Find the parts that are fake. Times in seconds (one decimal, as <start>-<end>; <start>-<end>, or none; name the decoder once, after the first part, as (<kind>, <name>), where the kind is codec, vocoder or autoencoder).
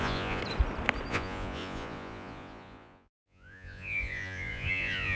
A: 0.0-0.4 (vocoder, Vocos); 1.1-5.2